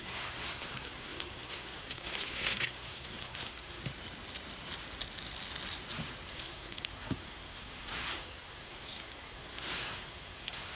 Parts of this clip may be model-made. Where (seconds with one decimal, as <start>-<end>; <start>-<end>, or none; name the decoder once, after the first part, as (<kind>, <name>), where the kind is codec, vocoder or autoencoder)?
0.0-3.8 (codec, SNAC); 6.3-10.8